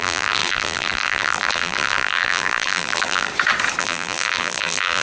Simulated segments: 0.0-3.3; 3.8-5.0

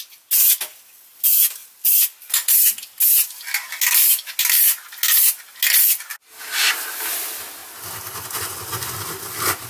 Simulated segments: none

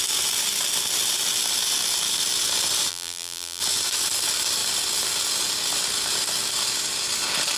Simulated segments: 2.9-3.6